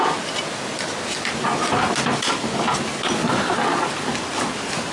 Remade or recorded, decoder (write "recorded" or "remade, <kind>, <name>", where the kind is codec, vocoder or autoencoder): recorded